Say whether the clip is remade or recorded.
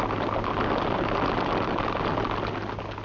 recorded